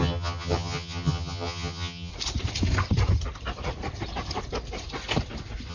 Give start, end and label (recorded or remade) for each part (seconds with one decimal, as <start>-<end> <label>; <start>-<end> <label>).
0.0-2.1 remade; 2.1-5.7 recorded